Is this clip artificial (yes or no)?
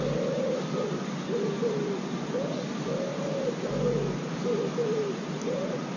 no